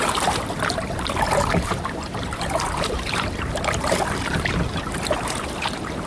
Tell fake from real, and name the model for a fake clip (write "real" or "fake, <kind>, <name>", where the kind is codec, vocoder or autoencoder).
fake, vocoder, BigVGAN v2